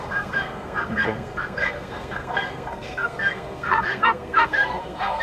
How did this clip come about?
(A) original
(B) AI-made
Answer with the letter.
B